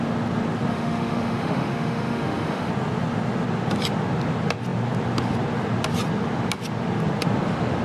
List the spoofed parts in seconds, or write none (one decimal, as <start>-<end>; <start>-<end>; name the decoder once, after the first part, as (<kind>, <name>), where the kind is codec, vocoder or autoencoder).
0.7-2.7 (autoencoder, DAC-VAE)